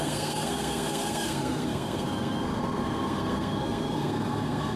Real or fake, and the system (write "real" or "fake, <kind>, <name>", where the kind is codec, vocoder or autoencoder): fake, codec, SNAC